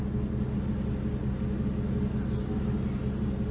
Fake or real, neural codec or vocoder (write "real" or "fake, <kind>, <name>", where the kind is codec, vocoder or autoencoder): real